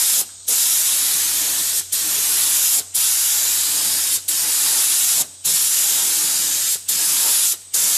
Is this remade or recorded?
recorded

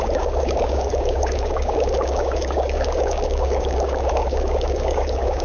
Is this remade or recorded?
remade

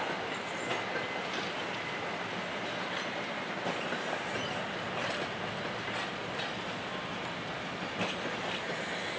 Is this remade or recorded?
recorded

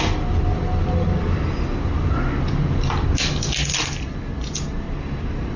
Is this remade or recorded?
recorded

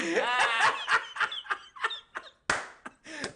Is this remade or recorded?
recorded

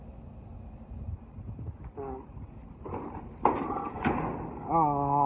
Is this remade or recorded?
recorded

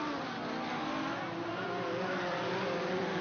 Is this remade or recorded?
recorded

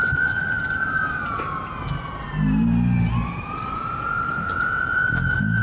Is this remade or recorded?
recorded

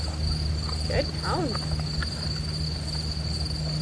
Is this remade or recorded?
recorded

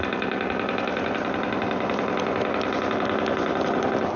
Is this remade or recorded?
recorded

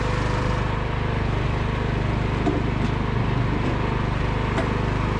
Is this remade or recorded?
recorded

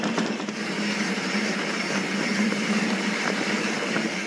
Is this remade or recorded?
remade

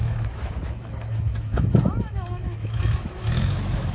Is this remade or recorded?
remade